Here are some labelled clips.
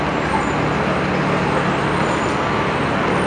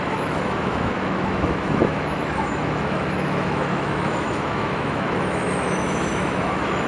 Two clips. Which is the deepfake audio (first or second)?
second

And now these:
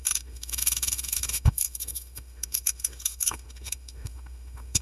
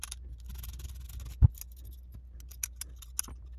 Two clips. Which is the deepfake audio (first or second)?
first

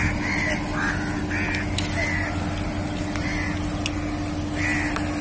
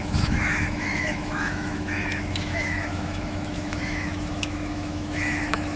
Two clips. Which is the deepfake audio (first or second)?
second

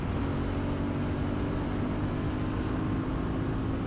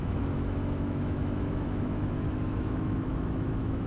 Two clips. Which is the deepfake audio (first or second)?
second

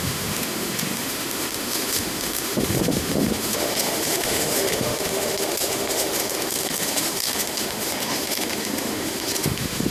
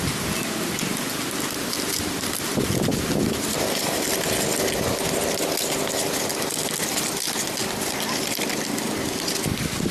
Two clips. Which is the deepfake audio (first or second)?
first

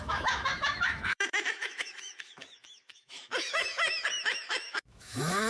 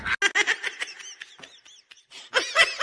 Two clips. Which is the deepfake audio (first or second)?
first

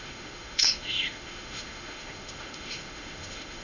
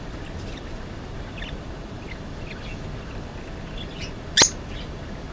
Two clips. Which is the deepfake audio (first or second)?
first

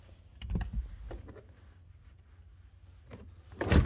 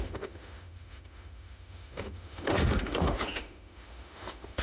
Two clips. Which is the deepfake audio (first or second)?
second